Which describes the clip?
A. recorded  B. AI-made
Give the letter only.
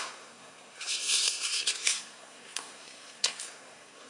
B